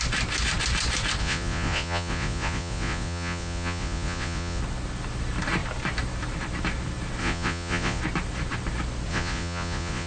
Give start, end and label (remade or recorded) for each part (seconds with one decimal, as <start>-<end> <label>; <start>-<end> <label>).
0.0-1.2 recorded; 1.2-4.6 remade; 4.6-7.2 recorded; 7.2-8.0 remade; 8.0-9.1 recorded; 9.1-10.1 remade